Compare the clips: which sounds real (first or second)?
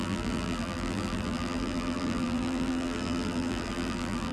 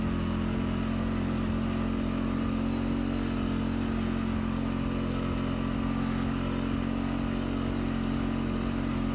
second